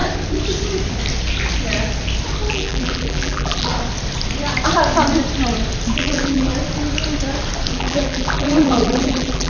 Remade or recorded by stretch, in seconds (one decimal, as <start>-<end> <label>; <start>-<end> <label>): 0.0-2.5 recorded; 2.5-3.7 remade; 3.7-6.0 recorded; 6.0-6.5 remade; 6.5-7.7 recorded; 7.7-9.5 remade